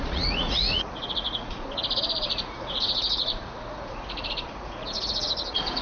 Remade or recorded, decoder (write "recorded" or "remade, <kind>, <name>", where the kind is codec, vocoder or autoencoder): remade, vocoder, Vocos